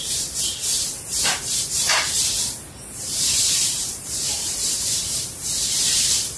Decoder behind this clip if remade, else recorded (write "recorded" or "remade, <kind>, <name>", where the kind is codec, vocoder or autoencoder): remade, vocoder, BigVGAN v2